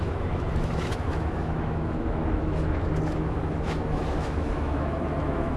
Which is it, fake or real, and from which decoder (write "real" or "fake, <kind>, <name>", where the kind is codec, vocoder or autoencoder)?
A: fake, autoencoder, DAC-VAE